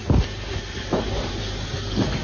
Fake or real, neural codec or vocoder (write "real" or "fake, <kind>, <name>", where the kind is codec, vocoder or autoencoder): real